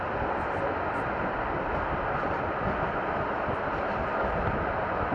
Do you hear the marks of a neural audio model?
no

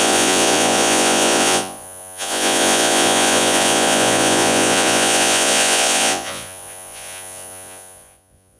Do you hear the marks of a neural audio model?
yes